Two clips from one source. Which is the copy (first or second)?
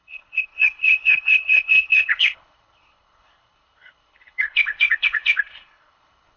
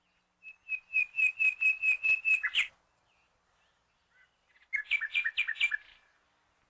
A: first